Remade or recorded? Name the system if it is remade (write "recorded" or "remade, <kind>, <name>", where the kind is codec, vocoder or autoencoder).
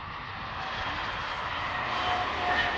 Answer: recorded